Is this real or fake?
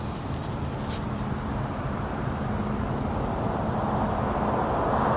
real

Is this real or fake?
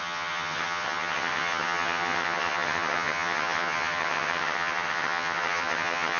fake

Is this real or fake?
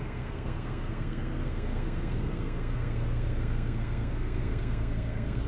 fake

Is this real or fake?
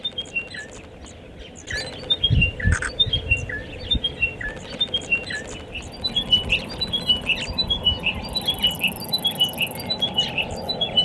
real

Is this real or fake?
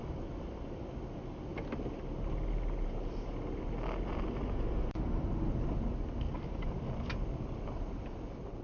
real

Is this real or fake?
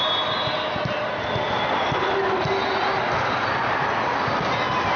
real